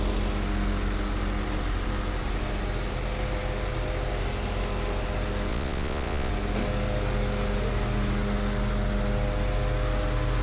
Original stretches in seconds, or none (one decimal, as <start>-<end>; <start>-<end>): 0.0-5.5; 6.3-10.4